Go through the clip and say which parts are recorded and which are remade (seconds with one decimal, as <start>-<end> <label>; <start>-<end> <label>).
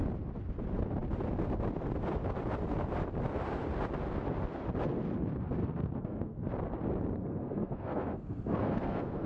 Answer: 0.0-5.6 recorded; 5.6-6.5 remade; 6.5-7.2 recorded; 7.2-9.3 remade